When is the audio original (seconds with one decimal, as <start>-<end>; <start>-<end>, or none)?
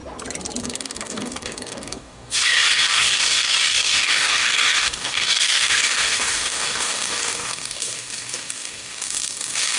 0.0-0.6